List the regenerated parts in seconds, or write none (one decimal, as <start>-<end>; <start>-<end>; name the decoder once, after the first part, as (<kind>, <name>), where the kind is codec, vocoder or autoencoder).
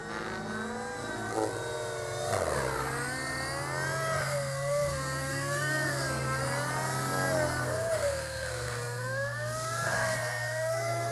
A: 4.2-6.4 (codec, SNAC); 7.6-11.1